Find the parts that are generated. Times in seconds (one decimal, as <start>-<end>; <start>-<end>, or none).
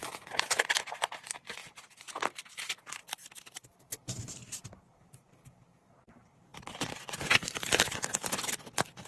0.0-9.1